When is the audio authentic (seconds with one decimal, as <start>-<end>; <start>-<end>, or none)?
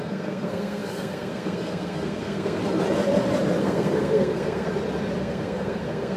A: 2.6-3.6; 4.7-5.2